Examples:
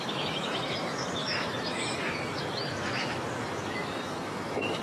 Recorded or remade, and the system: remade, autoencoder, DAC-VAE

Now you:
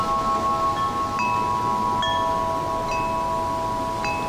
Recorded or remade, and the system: recorded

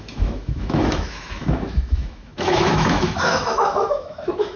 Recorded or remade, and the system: remade, autoencoder, DAC-VAE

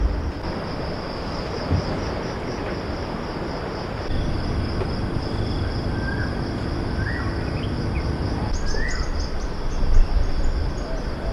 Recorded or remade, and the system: recorded